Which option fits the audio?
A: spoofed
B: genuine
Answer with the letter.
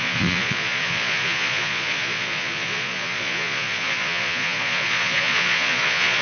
A